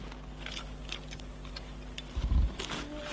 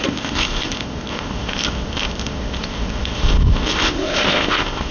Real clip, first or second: first